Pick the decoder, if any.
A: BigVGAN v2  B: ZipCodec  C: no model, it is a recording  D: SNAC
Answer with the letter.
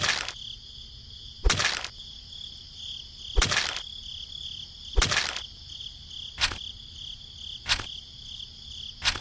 C